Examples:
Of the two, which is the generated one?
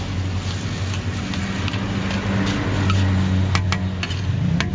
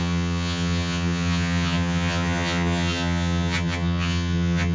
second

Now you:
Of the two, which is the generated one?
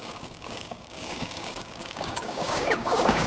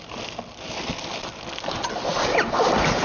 first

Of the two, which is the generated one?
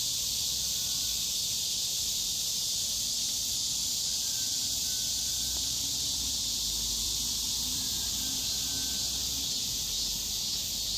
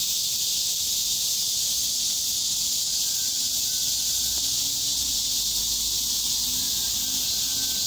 first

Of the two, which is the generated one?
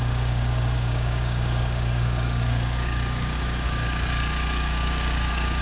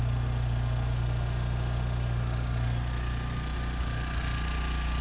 first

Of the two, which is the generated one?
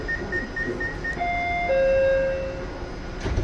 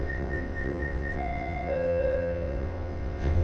second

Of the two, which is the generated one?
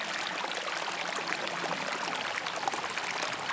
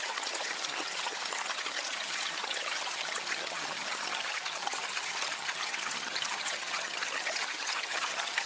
second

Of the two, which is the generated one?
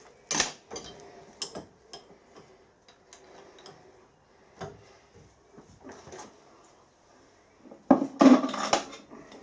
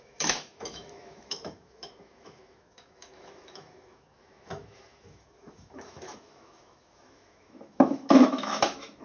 second